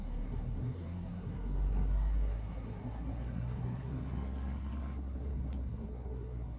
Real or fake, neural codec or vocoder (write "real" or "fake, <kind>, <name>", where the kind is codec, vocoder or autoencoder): fake, codec, SNAC